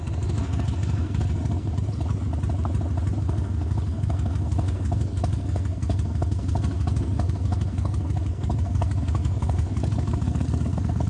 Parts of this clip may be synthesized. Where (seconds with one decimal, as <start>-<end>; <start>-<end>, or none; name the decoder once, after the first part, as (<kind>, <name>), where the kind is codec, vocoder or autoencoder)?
0.0-1.7 (codec, SNAC); 3.2-11.1

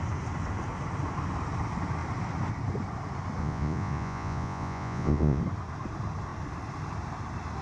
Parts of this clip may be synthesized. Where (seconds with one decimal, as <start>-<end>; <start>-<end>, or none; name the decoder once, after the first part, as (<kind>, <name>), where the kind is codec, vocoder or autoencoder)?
3.4-5.4 (vocoder, Vocos)

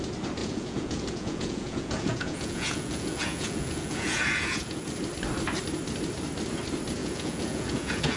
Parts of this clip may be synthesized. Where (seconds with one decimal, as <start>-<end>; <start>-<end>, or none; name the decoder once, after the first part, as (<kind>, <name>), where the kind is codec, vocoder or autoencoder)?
0.4-4.8 (vocoder, Vocos); 7.0-8.2